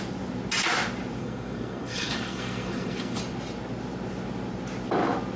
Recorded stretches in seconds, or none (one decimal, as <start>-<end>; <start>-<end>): 0.0-1.2; 3.2-5.4